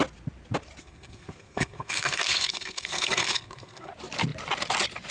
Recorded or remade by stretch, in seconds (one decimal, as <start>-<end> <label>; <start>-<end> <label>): 0.0-0.8 recorded; 0.8-3.9 remade; 3.9-5.1 recorded